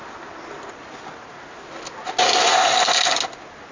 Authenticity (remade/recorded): recorded